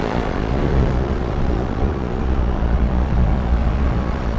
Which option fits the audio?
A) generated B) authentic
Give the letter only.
A